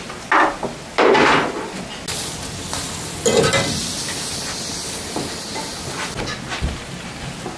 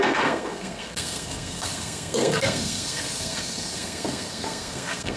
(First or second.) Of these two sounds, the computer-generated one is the second